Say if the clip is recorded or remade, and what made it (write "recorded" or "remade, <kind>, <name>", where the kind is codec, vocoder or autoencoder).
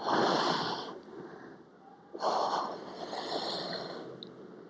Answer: recorded